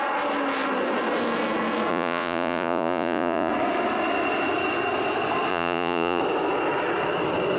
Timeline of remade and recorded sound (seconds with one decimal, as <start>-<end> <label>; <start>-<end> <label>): 0.0-1.9 recorded; 1.9-3.5 remade; 3.5-5.5 recorded; 5.5-6.2 remade; 6.2-7.6 recorded